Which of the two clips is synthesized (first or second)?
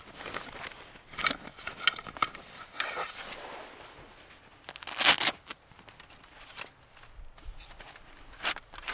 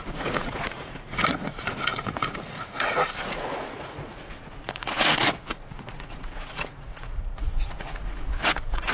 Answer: second